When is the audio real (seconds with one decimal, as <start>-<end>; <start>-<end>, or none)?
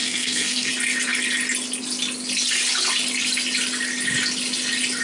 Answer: 0.7-5.0